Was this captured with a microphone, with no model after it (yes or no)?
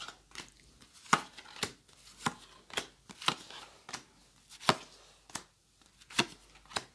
yes